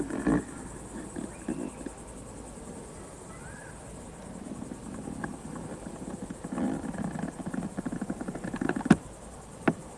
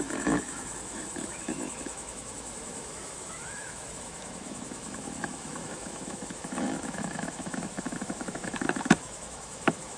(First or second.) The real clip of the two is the first